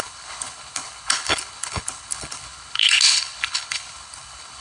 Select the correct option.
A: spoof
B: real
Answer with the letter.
A